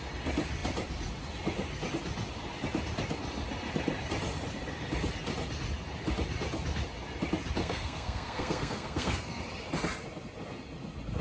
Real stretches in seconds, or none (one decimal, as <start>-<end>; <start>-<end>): 0.0-7.6; 9.4-11.2